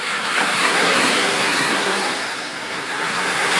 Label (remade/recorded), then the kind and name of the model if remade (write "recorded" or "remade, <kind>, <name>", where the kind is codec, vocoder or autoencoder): remade, codec, SNAC